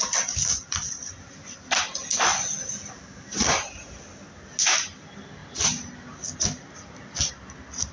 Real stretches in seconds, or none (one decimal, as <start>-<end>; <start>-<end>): 0.0-7.9